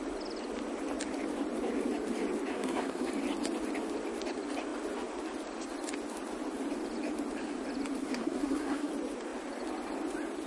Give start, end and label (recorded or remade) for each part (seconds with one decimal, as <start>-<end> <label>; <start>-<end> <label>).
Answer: 0.0-2.5 recorded; 2.5-3.1 remade; 3.1-8.0 recorded; 8.0-8.9 remade; 8.9-10.5 recorded

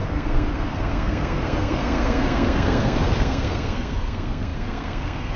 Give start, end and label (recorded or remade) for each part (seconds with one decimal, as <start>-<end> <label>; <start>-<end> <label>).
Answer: 0.0-5.4 remade

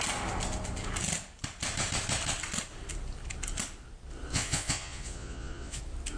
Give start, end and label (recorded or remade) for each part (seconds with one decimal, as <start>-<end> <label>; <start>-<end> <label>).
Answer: 0.0-4.3 recorded; 4.3-5.8 remade; 5.8-6.2 recorded

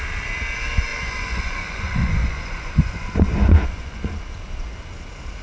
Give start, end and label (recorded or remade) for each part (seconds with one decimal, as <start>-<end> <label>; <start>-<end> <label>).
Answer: 0.0-0.9 recorded; 0.9-4.1 remade; 4.1-5.4 recorded

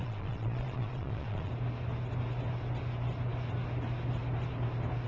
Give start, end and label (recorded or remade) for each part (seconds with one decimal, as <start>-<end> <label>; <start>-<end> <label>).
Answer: 0.0-1.5 remade; 1.5-5.1 recorded

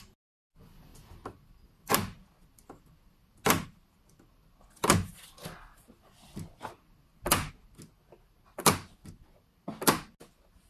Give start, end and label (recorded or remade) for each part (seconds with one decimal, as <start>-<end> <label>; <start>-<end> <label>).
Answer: 0.0-10.7 recorded

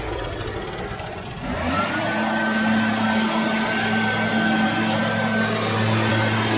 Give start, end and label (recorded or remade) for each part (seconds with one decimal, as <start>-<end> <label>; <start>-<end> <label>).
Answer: 0.0-0.9 recorded; 0.9-1.7 remade; 1.7-6.6 recorded

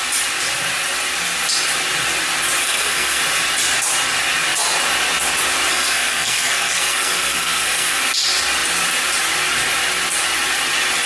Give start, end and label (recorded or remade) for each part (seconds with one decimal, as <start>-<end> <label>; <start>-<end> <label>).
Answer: 0.0-2.6 recorded; 2.6-3.2 remade; 3.2-5.7 recorded; 5.7-8.0 remade; 8.0-11.1 recorded